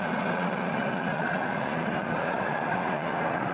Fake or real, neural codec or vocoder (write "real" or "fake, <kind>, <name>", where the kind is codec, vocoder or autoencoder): fake, vocoder, Vocos